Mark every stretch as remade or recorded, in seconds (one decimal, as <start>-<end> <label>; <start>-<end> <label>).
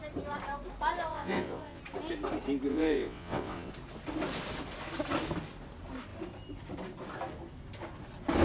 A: 0.0-1.1 recorded; 1.1-1.8 remade; 1.8-2.7 recorded; 2.7-3.7 remade; 3.7-8.4 recorded